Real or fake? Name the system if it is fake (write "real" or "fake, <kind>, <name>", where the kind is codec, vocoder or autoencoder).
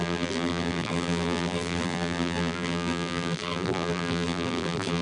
fake, vocoder, BigVGAN v2